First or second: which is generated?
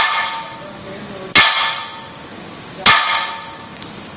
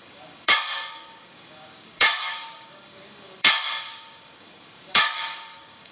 second